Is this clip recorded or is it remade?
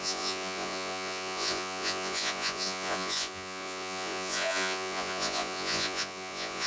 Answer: remade